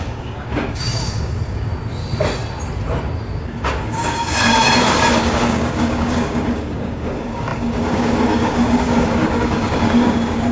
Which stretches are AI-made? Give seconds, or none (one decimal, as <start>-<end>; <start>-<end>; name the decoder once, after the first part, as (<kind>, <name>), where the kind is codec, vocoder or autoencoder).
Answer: 0.0-1.7 (codec, DAC); 3.4-10.5